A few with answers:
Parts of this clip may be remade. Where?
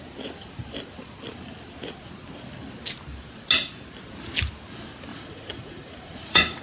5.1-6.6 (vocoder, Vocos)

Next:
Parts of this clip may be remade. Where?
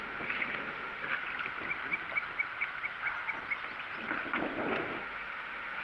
0.0-1.2 (autoencoder, DAC-VAE); 4.7-5.8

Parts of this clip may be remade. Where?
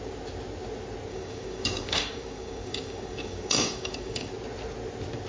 1.1-4.3 (codec, DAC)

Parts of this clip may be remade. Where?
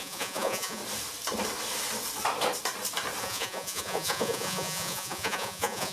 0.0-0.8 (vocoder, Vocos); 3.2-5.9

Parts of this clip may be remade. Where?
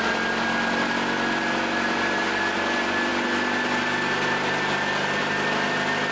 none